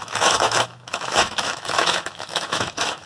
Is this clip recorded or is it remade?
remade